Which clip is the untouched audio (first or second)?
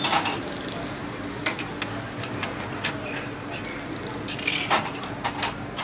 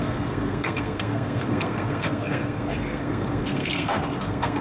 first